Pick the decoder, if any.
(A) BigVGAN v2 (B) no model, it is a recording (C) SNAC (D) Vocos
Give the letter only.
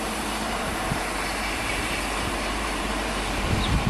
A